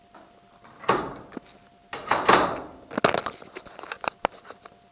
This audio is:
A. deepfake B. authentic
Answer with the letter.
B